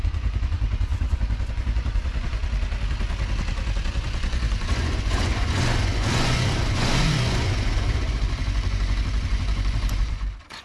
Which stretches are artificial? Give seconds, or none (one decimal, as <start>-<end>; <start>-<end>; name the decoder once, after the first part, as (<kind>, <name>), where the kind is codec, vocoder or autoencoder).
0.0-2.4 (vocoder, Vocos); 3.8-10.6